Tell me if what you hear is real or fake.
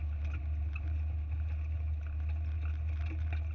real